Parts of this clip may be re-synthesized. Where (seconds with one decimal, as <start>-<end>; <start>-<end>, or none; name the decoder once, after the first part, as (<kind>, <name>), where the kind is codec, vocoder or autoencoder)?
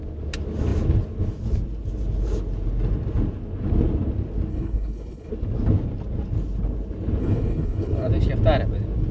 4.5-5.3 (codec, HILCodec); 7.2-8.1